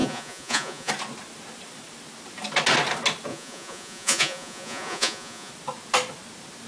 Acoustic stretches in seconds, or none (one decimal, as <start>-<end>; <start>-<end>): 0.9-3.3; 5.5-6.7